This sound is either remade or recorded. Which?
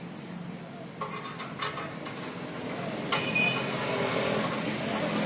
recorded